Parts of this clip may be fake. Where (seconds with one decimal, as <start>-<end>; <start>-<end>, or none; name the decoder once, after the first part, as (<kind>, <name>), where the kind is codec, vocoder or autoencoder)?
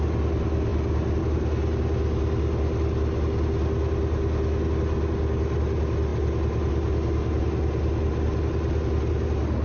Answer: none